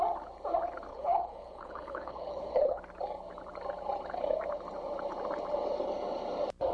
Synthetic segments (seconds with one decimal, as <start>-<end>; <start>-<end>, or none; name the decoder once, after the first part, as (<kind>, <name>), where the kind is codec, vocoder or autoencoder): 0.9-2.8 (codec, HILCodec)